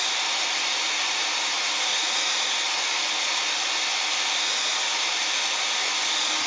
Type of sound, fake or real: real